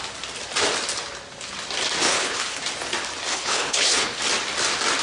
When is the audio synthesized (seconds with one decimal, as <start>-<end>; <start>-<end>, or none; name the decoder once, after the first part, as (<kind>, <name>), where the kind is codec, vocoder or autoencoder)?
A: 2.0-2.6 (codec, HILCodec); 3.3-4.2

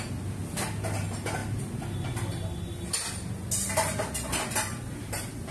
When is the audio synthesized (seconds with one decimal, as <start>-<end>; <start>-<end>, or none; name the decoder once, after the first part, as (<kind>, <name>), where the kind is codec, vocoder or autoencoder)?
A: none

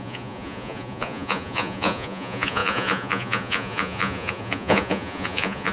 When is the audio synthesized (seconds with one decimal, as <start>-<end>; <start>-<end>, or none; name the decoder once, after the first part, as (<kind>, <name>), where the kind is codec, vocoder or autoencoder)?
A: 0.0-5.7 (vocoder, Vocos)

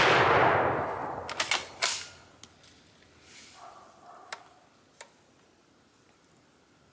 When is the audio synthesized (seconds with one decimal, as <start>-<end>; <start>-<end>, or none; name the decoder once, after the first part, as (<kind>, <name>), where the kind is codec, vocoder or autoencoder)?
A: none

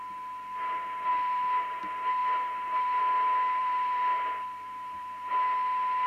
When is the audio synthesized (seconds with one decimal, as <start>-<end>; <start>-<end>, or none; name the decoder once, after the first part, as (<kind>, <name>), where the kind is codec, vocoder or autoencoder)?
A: 1.1-1.8 (vocoder, BigVGAN v2); 2.2-3.0; 3.6-5.3